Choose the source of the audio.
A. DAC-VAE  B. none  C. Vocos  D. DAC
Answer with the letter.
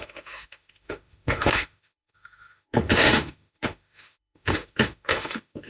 A